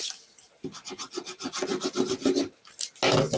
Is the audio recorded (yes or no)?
yes